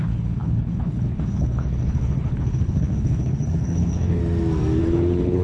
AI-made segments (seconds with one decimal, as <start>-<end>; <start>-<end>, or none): 0.0-4.2; 4.8-5.4